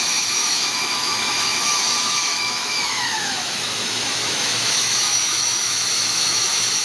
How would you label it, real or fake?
fake